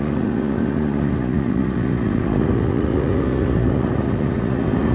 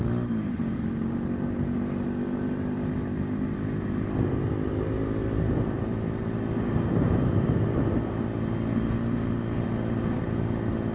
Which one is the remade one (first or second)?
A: first